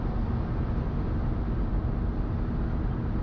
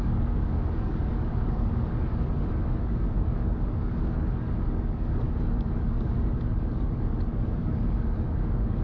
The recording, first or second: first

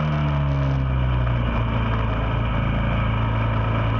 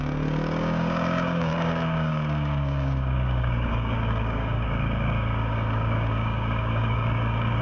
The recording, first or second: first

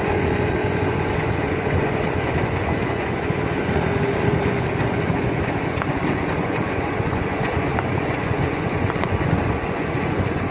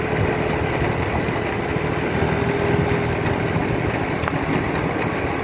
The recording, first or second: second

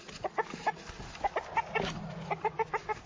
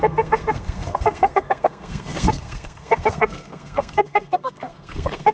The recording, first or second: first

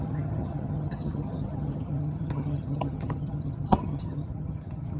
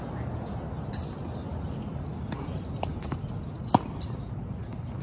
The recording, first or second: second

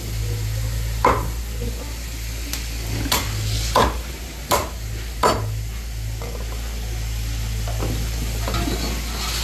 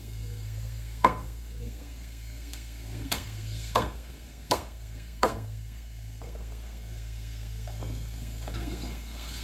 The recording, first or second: first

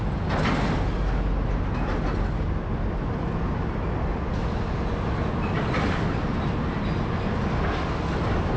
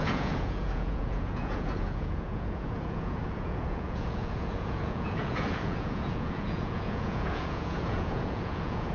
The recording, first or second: first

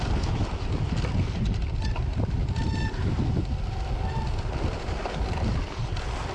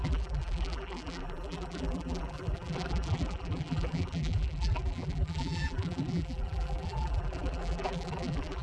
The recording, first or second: first